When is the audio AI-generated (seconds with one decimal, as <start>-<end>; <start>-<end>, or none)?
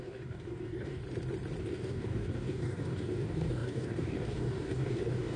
0.0-1.0; 1.6-5.4